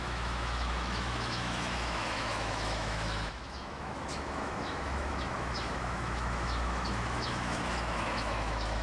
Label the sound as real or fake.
fake